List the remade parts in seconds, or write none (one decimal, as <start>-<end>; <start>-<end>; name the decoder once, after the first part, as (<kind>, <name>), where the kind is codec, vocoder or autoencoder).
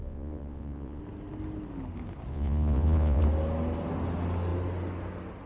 0.0-1.0 (vocoder, Vocos); 2.3-3.2